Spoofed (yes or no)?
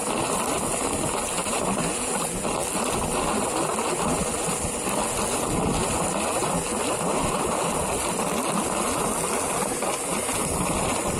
no